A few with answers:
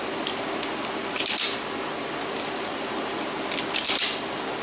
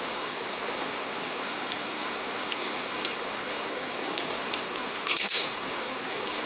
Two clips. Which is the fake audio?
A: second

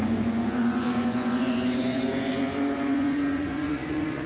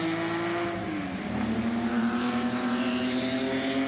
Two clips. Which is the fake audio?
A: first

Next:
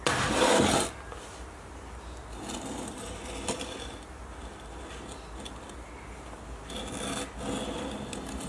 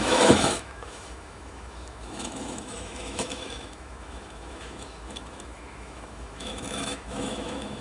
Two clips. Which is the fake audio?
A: second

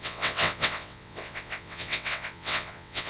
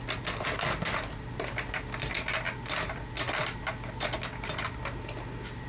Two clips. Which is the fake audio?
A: first